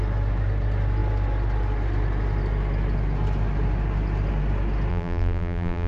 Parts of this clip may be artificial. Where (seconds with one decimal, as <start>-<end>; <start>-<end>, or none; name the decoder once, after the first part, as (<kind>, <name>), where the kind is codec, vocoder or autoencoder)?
4.9-5.9 (vocoder, BigVGAN v2)